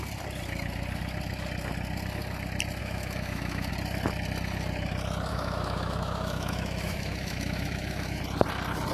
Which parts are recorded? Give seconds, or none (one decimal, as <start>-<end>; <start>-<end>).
0.0-2.8; 3.7-5.3; 8.2-8.9